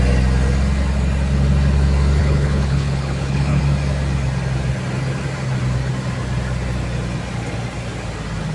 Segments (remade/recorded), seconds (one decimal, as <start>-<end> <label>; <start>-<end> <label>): 0.0-2.2 recorded; 2.2-3.6 remade; 3.6-8.5 recorded